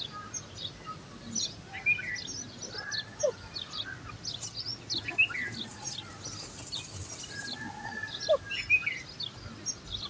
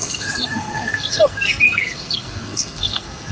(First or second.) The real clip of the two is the first